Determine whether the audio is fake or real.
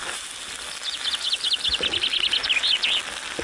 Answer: real